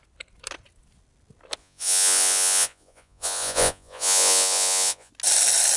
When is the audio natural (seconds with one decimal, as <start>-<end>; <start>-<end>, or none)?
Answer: 0.0-1.6; 5.1-5.8